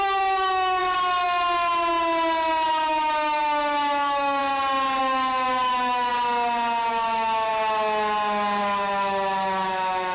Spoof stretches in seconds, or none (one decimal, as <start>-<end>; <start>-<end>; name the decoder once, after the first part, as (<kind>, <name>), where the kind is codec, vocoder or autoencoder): 0.0-0.8 (autoencoder, DAC-VAE); 2.7-4.4; 5.0-6.1; 6.9-7.5; 8.6-10.1